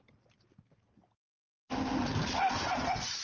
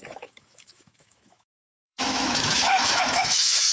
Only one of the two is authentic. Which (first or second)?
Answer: first